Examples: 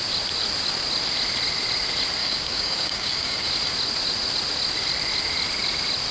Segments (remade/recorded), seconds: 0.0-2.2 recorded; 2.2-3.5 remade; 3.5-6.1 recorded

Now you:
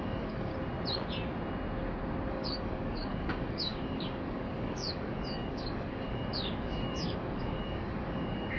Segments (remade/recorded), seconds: 0.0-0.5 remade; 0.5-2.3 recorded; 2.3-8.6 remade

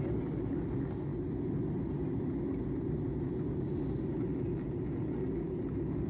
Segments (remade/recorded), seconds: 0.0-6.1 recorded

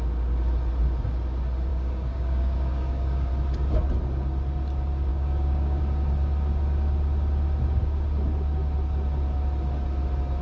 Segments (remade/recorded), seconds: 0.0-1.7 recorded; 1.7-3.3 remade; 3.3-5.1 recorded; 5.1-5.8 remade; 5.8-10.4 recorded

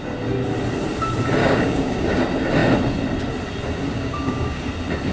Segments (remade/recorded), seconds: 0.0-1.4 recorded; 1.4-2.2 remade; 2.2-3.9 recorded; 3.9-4.6 remade; 4.6-5.1 recorded

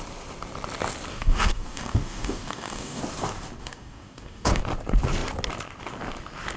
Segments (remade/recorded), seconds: 0.0-1.1 recorded; 1.1-3.0 remade; 3.0-3.6 recorded; 3.6-4.6 remade; 4.6-6.6 recorded